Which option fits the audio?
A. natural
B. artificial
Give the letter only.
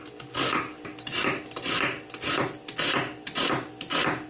A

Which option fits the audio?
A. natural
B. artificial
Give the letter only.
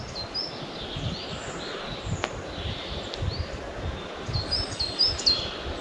A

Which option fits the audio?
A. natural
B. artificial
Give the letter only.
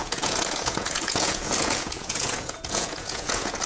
B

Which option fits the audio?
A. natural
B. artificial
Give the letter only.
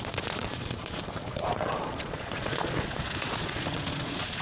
B